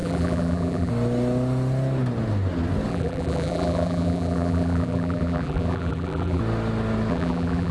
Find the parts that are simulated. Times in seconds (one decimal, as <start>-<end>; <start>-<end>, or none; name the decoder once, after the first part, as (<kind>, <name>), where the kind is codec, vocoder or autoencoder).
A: 0.0-0.9 (vocoder, BigVGAN v2); 2.9-6.4; 7.1-7.7